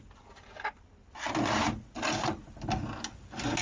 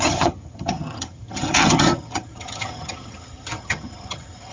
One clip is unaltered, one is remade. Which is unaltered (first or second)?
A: first